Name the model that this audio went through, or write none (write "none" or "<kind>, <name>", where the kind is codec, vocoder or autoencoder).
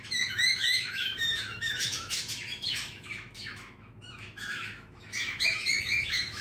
autoencoder, DAC-VAE